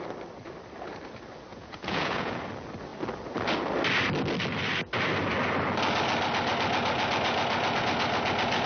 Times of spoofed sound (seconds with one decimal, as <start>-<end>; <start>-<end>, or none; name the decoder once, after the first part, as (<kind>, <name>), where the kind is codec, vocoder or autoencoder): 1.5-2.4 (vocoder, Vocos)